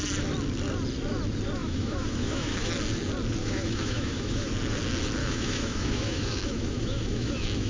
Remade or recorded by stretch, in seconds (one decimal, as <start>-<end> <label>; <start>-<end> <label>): 0.0-1.6 recorded; 1.6-2.7 remade; 2.7-3.4 recorded; 3.4-4.5 remade; 4.5-5.2 recorded; 5.2-7.7 remade